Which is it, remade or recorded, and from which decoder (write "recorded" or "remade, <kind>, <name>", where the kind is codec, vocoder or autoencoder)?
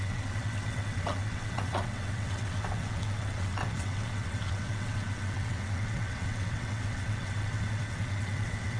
remade, vocoder, WaveNeXt